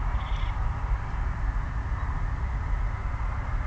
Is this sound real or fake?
real